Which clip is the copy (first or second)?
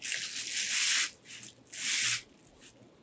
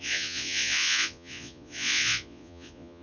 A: second